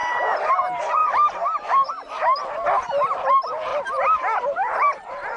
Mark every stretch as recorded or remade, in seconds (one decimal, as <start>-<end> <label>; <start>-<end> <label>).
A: 0.0-0.5 remade; 0.5-1.0 recorded; 1.0-1.9 remade; 1.9-3.7 recorded; 3.7-5.4 remade